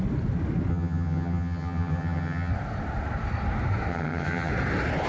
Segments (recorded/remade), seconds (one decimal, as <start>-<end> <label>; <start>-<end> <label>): 0.0-0.7 recorded; 0.7-2.5 remade; 2.5-3.9 recorded; 3.9-4.5 remade; 4.5-5.1 recorded